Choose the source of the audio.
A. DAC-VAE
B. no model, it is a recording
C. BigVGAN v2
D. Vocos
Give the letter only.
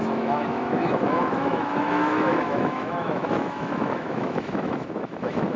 A